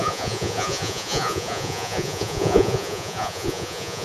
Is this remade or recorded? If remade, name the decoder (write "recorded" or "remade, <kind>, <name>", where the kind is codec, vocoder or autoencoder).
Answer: remade, vocoder, Vocos